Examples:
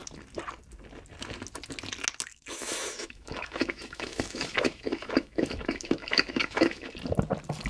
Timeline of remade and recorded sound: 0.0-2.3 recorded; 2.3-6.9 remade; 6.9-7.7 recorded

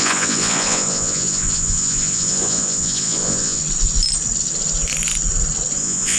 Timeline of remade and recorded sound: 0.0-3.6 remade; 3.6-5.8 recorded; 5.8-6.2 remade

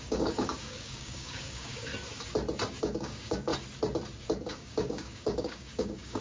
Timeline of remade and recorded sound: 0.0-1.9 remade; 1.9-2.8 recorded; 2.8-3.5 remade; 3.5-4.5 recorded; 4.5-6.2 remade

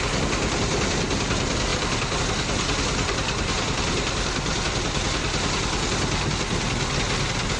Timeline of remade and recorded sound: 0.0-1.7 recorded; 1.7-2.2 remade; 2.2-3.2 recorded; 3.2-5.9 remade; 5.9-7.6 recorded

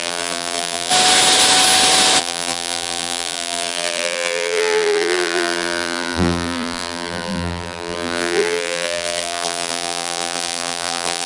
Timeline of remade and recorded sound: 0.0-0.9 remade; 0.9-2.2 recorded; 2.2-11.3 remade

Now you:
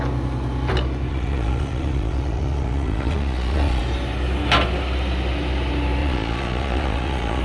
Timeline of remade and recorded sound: 0.0-1.1 recorded; 1.1-3.8 remade; 3.8-6.0 recorded; 6.0-7.4 remade